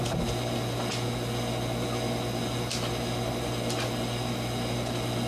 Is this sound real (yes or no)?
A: yes